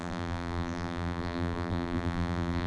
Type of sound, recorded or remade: remade